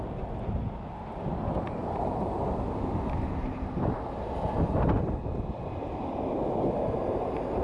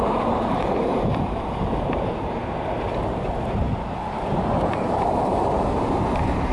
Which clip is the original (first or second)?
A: first